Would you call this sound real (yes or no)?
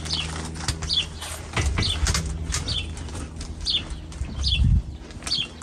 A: yes